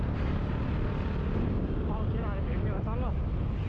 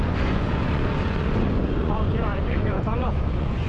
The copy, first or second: second